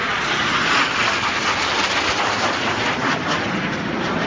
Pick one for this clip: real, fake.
real